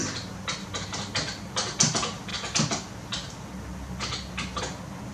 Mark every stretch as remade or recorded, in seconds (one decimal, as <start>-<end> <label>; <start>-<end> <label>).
0.0-5.1 recorded